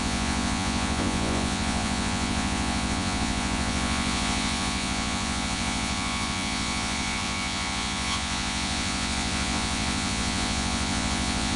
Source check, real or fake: fake